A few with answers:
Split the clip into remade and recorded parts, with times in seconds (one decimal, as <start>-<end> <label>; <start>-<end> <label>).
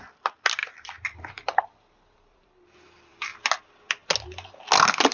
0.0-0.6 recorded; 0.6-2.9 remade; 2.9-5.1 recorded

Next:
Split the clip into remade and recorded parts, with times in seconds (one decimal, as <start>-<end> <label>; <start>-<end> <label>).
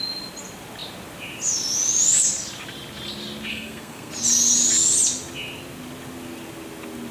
0.0-3.5 recorded; 3.5-4.1 remade; 4.1-7.1 recorded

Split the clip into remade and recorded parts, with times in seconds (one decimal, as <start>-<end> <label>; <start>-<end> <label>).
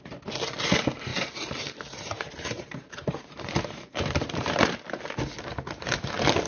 0.0-1.1 recorded; 1.1-5.0 remade; 5.0-6.5 recorded